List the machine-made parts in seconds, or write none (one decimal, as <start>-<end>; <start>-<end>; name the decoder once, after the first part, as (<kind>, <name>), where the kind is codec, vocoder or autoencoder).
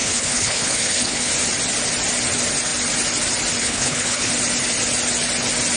0.0-1.3 (codec, HILCodec); 3.6-4.3